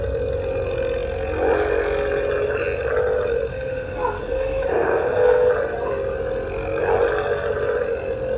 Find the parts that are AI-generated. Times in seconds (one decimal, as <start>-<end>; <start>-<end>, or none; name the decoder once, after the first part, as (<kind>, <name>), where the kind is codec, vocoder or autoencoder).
3.5-5.5 (codec, SNAC)